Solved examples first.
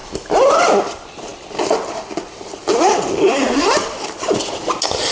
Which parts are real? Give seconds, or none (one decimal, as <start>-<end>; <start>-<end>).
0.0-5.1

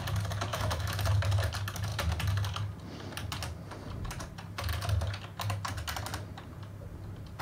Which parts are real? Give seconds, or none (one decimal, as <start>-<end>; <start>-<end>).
0.0-0.5; 1.0-7.4

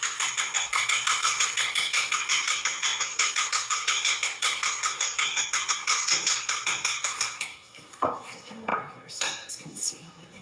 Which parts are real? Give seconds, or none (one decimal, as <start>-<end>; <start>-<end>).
none

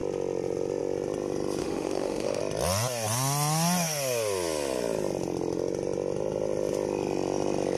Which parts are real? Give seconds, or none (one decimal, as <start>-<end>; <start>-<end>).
0.0-1.6; 2.4-7.8